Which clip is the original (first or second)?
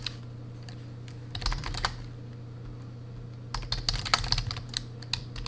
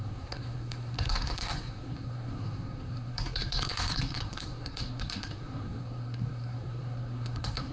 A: first